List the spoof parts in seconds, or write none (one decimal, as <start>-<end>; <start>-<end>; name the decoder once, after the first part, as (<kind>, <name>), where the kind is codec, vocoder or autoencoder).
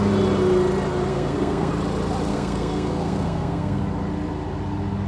1.1-1.7 (codec, SNAC); 2.3-3.8